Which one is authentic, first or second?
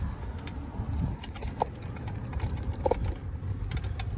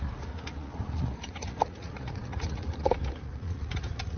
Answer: first